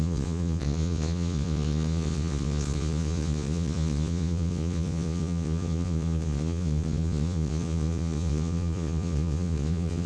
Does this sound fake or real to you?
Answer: fake